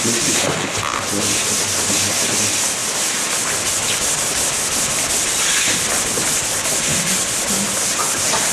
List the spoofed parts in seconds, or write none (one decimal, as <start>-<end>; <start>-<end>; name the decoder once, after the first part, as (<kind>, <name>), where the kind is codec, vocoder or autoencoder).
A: 2.8-5.6 (vocoder, BigVGAN v2); 6.9-7.8